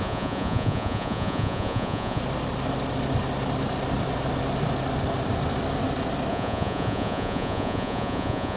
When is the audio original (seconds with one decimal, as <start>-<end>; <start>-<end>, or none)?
2.2-6.3